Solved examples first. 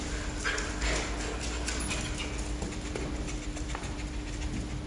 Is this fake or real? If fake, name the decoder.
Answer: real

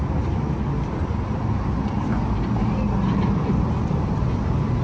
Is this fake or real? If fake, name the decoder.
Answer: real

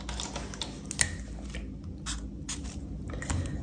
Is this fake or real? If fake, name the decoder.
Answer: real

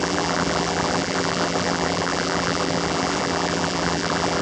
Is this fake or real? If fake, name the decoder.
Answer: fake, vocoder, BigVGAN v2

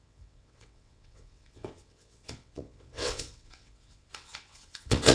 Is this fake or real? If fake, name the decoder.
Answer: fake, vocoder, WaveNeXt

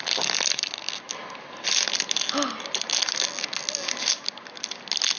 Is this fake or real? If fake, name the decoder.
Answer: real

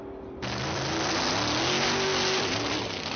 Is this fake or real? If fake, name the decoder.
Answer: real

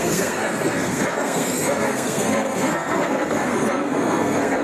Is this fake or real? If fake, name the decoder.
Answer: fake, codec, SNAC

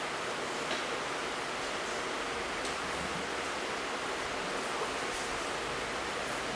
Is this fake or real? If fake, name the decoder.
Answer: real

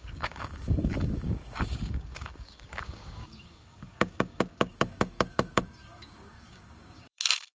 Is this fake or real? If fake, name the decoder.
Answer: fake, codec, DAC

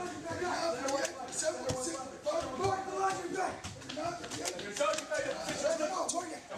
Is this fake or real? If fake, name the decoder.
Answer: real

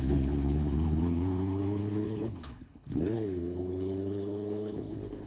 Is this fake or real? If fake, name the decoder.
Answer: fake, codec, HILCodec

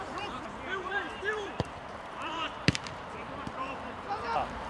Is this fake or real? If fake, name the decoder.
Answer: fake, vocoder, BigVGAN v2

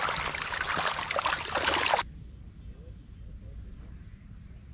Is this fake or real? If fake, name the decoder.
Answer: real